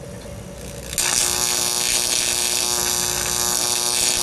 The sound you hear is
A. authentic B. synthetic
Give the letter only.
A